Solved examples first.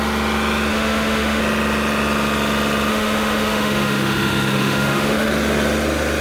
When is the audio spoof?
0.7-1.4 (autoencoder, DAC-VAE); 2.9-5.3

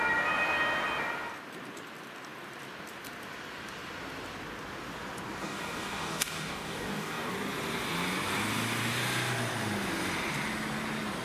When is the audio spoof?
5.4-7.3 (codec, DAC)

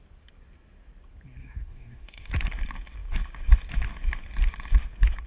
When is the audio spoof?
1.4-2.3 (autoencoder, DAC-VAE)

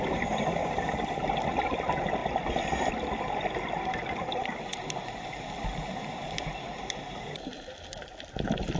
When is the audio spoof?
none

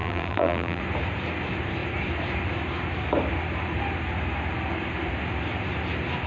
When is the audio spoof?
0.0-0.8 (vocoder, BigVGAN v2)

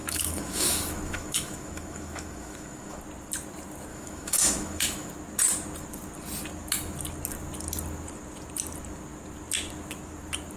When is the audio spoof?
0.0-3.0 (autoencoder, DAC-VAE); 3.9-5.1

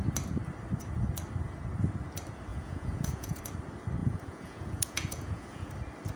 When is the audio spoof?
2.5-3.4 (vocoder, Vocos); 4.0-5.7